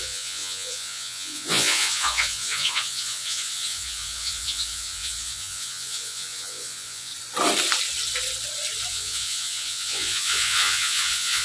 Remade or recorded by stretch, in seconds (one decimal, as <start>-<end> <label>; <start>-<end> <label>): 0.0-7.1 remade; 7.1-8.9 recorded; 8.9-11.4 remade